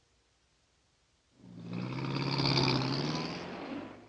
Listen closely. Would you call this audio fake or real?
real